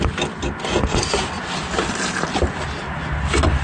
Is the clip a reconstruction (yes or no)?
no